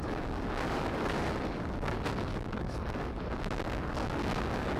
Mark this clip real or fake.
fake